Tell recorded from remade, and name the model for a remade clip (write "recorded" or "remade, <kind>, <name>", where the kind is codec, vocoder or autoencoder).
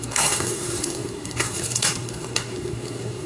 remade, codec, SNAC